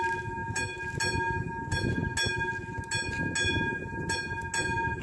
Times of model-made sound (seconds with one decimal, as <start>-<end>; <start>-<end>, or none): none